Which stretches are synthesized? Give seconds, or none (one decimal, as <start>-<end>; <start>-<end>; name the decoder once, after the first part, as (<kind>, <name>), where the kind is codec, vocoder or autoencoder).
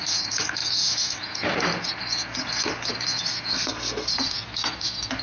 3.5-4.1 (codec, SNAC)